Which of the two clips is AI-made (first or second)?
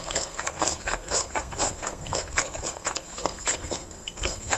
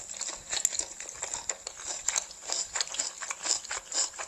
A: first